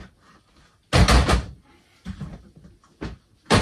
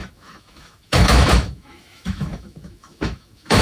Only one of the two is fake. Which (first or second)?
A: second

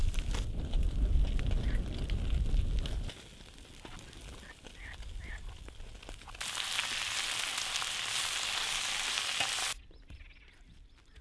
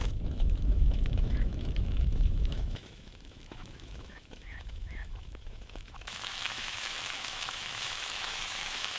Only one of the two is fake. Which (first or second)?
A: second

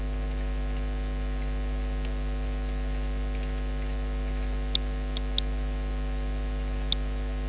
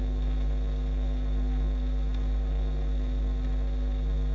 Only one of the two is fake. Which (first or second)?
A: second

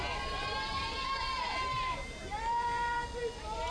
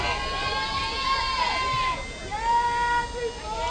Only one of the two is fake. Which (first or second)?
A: first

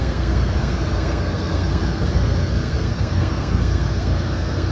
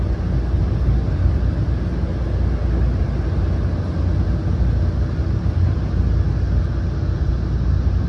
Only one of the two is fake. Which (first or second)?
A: first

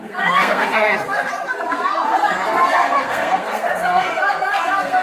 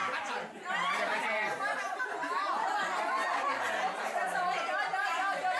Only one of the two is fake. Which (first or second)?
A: first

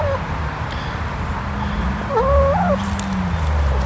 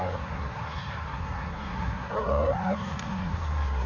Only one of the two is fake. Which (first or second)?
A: second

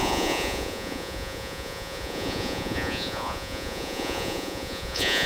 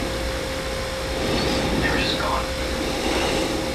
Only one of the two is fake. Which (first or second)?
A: first